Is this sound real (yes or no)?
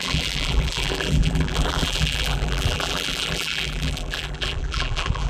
no